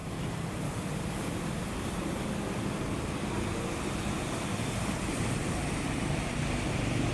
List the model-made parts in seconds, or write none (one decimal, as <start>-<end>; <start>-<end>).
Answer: 0.0-3.1; 5.4-6.3